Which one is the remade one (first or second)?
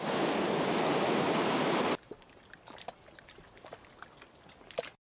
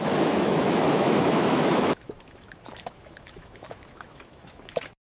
second